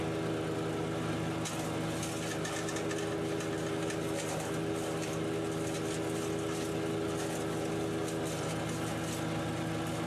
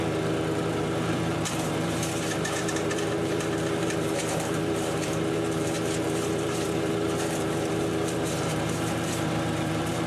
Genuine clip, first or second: first